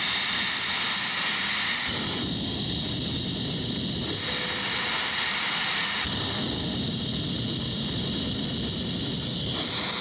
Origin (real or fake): real